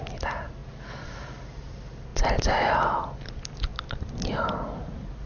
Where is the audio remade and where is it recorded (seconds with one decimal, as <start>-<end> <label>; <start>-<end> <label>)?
0.0-5.3 recorded